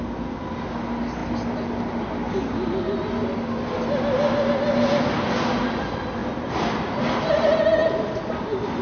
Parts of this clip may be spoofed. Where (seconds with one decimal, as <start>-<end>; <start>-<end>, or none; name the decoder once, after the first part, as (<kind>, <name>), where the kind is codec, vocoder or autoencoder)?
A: none